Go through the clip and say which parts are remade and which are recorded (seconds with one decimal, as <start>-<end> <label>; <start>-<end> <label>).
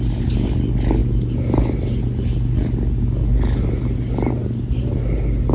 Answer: 0.0-5.5 recorded